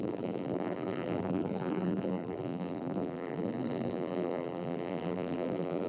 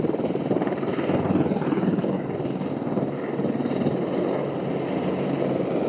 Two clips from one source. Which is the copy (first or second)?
first